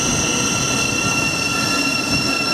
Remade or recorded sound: recorded